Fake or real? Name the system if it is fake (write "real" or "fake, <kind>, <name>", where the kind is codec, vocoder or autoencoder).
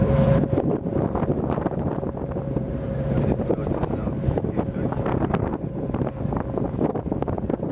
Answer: fake, vocoder, BigVGAN v2